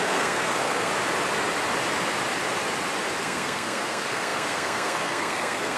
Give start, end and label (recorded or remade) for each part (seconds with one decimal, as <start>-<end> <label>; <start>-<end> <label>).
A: 0.0-0.9 remade; 0.9-3.2 recorded; 3.2-5.8 remade